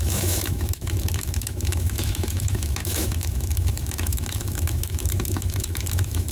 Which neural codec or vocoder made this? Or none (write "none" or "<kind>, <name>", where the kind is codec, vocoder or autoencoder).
autoencoder, DAC-VAE